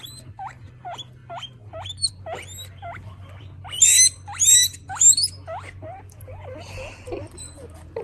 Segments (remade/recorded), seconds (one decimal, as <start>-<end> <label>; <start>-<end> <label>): 0.0-8.0 recorded